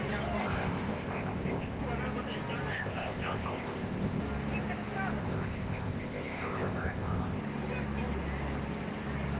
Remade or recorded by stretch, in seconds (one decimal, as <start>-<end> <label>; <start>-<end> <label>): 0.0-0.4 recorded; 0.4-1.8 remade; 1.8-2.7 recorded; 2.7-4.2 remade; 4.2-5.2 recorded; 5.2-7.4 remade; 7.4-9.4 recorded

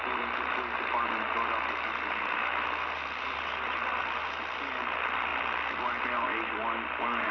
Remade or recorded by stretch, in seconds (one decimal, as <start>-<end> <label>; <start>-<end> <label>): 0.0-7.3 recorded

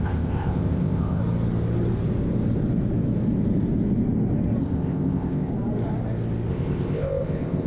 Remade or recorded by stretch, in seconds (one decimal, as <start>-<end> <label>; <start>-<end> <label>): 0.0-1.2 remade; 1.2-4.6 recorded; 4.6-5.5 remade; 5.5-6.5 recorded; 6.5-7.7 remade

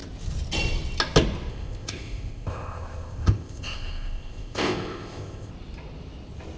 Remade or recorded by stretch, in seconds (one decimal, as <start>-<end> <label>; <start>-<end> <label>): 0.0-1.5 recorded; 1.5-5.5 remade; 5.5-6.6 recorded

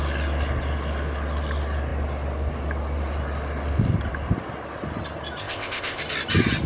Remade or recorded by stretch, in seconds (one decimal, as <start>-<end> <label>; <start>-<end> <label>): 0.0-5.4 recorded; 5.4-6.0 remade; 6.0-6.7 recorded

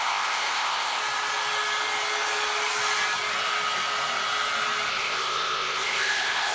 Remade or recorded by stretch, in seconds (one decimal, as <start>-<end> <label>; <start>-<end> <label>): 0.0-1.0 remade; 1.0-4.9 recorded; 4.9-6.5 remade

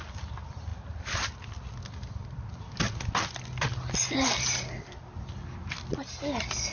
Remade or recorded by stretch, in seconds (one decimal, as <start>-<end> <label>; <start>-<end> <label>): 0.0-6.7 recorded

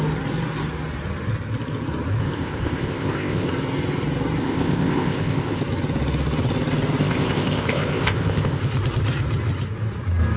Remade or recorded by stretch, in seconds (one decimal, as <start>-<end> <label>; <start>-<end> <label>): 0.0-2.2 recorded; 2.2-3.5 remade; 3.5-4.4 recorded; 4.4-5.6 remade; 5.6-7.0 recorded; 7.0-8.6 remade; 8.6-10.4 recorded